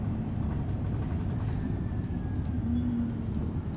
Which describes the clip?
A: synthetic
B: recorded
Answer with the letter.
B